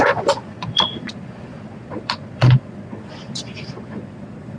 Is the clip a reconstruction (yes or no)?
yes